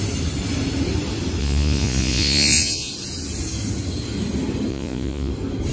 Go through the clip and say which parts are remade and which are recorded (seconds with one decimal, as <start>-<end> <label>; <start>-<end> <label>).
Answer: 0.0-1.4 recorded; 1.4-2.9 remade; 2.9-4.7 recorded; 4.7-5.3 remade; 5.3-5.7 recorded